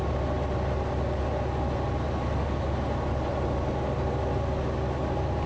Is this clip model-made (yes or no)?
no